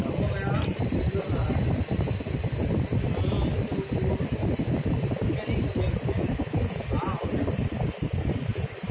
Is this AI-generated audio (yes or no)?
no